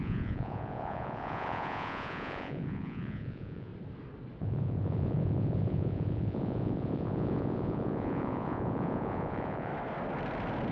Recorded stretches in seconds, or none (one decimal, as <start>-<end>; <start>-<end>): 3.7-4.4; 9.7-10.7